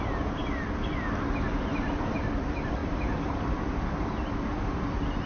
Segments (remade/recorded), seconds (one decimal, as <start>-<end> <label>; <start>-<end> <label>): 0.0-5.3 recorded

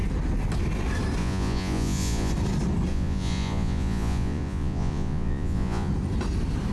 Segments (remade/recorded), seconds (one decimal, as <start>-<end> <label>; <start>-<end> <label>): 0.0-1.2 recorded; 1.2-2.3 remade; 2.3-2.9 recorded; 2.9-5.9 remade; 5.9-6.7 recorded

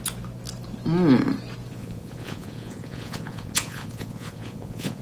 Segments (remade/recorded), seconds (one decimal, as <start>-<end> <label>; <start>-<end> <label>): 0.0-1.7 recorded; 1.7-5.0 remade

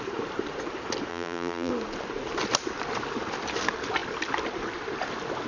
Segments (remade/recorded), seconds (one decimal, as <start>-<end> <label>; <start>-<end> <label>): 0.0-1.1 recorded; 1.1-1.7 remade; 1.7-5.5 recorded

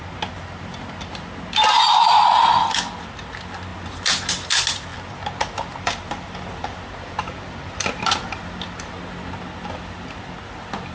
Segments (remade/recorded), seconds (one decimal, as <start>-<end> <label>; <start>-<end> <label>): 0.0-4.9 recorded; 4.9-8.9 remade; 8.9-10.9 recorded

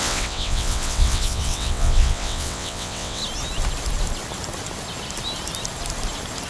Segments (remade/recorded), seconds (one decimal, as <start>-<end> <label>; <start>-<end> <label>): 0.0-3.2 remade; 3.2-6.5 recorded